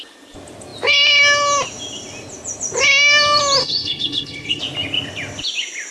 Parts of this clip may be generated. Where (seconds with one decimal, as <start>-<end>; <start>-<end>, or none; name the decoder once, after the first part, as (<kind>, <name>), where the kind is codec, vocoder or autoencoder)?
3.6-4.6 (codec, HILCodec)